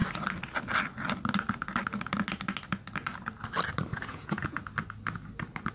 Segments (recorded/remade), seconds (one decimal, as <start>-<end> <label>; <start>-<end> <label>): 0.0-3.9 recorded; 3.9-4.6 remade; 4.6-5.7 recorded